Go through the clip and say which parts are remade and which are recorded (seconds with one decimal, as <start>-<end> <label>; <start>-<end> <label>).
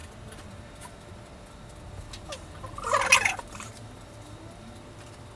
0.0-0.5 remade; 0.5-5.4 recorded